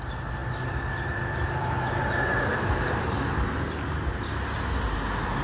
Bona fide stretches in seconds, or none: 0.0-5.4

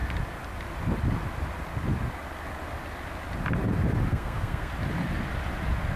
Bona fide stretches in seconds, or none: 0.0-4.1; 4.7-6.0

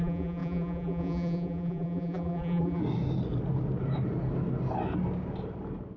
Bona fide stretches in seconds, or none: 2.8-6.0

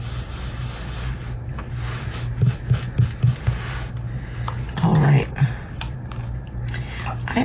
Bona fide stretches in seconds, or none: 0.0-4.9; 6.2-7.4